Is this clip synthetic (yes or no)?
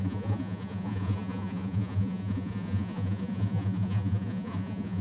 yes